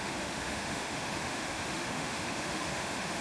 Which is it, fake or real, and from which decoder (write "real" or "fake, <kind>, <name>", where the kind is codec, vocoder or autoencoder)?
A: fake, autoencoder, DAC-VAE